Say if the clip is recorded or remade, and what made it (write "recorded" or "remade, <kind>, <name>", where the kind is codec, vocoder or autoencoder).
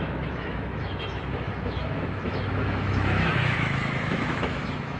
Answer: remade, autoencoder, DAC-VAE